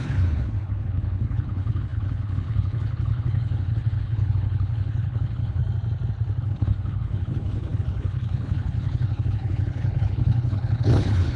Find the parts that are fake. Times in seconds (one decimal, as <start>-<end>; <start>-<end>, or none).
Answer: 0.0-5.6; 6.4-11.4